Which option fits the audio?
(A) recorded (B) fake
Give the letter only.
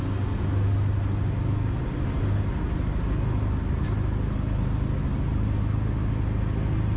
A